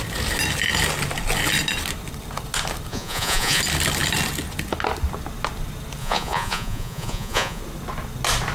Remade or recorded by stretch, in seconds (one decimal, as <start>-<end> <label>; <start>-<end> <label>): 0.0-2.9 recorded; 2.9-3.6 remade; 3.6-6.0 recorded; 6.0-7.6 remade; 7.6-8.5 recorded